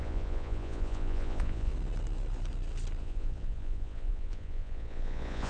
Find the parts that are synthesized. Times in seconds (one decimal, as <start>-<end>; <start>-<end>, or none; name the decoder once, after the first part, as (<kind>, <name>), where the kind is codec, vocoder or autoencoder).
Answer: 0.0-1.7 (vocoder, Vocos); 3.0-5.5